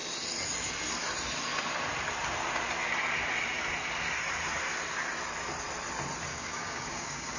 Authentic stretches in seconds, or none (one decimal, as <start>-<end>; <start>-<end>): 0.0-6.3